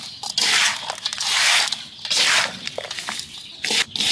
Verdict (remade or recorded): recorded